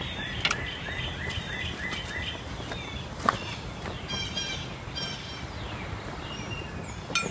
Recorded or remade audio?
recorded